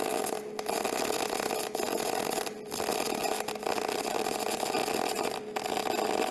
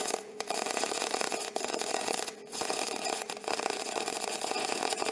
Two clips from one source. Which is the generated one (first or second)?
second